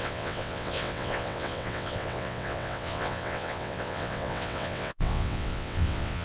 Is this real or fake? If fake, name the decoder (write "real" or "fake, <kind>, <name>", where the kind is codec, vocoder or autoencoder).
fake, vocoder, WaveNeXt